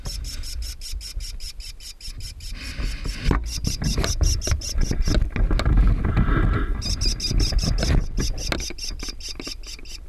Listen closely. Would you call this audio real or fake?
real